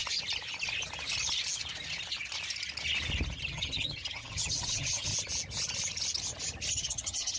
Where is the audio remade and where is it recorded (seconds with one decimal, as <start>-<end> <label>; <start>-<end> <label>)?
0.0-3.5 recorded; 3.5-5.1 remade; 5.1-6.7 recorded; 6.7-7.4 remade